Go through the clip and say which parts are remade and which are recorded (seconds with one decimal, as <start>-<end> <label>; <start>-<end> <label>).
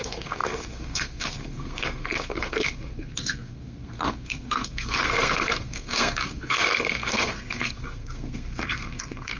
0.0-9.4 remade